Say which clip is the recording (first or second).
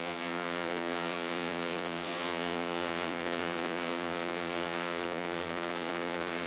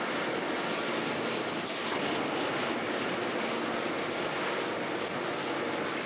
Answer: second